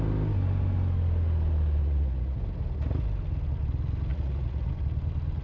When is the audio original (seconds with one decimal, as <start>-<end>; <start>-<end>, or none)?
0.0-1.8; 2.4-4.1; 4.7-5.4